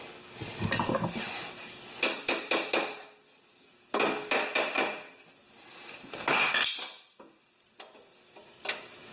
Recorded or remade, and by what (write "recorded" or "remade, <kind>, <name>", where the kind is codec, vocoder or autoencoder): recorded